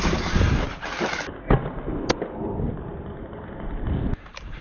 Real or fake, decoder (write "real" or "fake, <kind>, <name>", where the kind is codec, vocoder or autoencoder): real